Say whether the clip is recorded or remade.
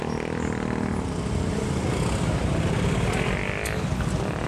recorded